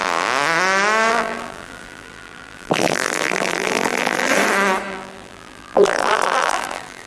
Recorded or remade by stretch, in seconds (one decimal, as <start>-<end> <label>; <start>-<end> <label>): 0.0-1.1 recorded; 1.1-4.3 remade; 4.3-4.9 recorded; 4.9-7.1 remade